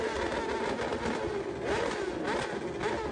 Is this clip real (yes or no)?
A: yes